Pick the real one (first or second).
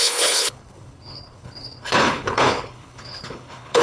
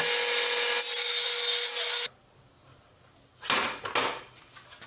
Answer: second